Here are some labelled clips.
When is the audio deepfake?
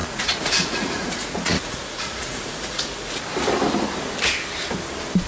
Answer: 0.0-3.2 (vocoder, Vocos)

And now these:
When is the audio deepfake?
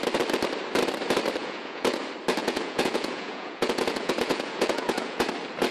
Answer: 1.4-2.0 (vocoder, Vocos); 2.4-5.3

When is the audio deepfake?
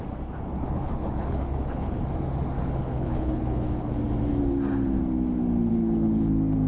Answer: 0.5-1.9 (codec, HILCodec); 2.8-4.0; 5.7-6.3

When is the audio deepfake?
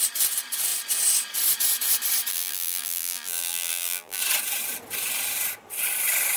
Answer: 2.3-4.2 (vocoder, BigVGAN v2)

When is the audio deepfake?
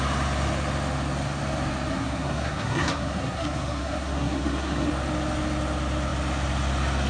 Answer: 1.9-4.9 (codec, SNAC)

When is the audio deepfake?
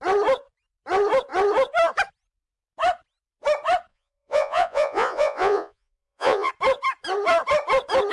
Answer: 3.9-6.5 (vocoder, Vocos)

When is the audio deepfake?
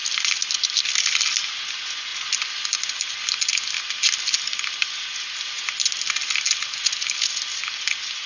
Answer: none